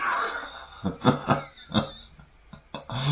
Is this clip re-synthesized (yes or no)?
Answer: no